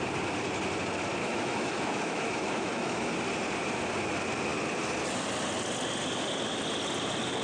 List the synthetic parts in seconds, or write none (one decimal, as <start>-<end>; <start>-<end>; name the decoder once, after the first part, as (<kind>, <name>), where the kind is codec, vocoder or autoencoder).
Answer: 1.2-3.1 (autoencoder, DAC-VAE)